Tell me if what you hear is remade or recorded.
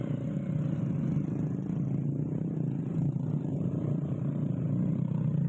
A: recorded